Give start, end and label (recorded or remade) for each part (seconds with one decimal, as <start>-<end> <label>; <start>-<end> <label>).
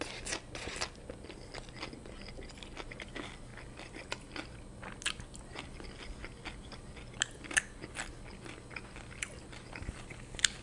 0.0-10.6 recorded